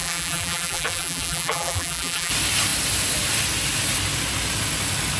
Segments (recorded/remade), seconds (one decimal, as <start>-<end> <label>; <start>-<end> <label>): 0.0-2.3 remade; 2.3-5.2 recorded